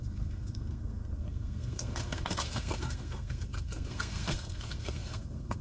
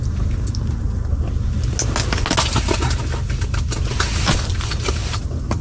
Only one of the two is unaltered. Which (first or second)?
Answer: second